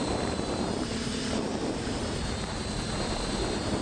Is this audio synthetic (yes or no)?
yes